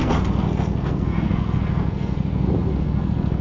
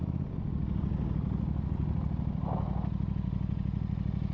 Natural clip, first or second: second